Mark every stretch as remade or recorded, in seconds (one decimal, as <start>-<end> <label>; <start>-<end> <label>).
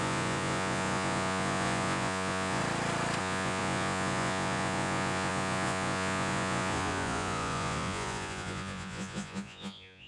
0.0-2.6 remade; 2.6-3.2 recorded; 3.2-10.1 remade